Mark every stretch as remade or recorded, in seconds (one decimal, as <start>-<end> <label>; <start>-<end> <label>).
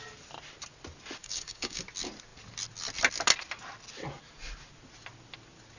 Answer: 0.0-1.2 recorded; 1.2-1.8 remade; 1.8-5.8 recorded